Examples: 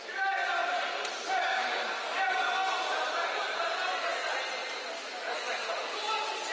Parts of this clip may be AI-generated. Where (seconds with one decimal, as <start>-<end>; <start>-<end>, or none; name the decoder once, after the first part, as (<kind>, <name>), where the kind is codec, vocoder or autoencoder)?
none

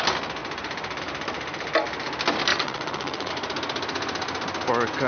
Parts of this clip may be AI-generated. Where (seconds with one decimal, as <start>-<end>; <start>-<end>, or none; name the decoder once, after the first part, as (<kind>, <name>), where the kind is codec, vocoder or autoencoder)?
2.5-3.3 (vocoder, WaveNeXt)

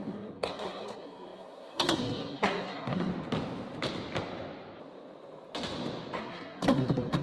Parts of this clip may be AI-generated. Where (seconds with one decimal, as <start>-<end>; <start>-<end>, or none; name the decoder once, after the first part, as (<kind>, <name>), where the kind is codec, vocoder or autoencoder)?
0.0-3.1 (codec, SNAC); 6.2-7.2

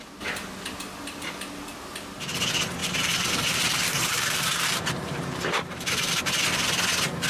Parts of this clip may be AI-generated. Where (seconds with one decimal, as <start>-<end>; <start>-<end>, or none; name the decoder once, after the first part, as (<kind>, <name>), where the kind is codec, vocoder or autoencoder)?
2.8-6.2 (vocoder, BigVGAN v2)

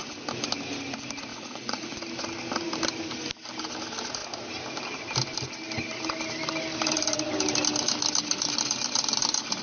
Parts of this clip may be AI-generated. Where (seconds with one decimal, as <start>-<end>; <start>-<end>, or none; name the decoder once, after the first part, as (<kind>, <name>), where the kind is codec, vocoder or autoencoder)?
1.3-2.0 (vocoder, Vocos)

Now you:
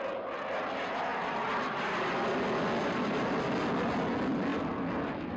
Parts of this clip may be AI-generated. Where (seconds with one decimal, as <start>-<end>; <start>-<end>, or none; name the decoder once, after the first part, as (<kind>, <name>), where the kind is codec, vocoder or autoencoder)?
none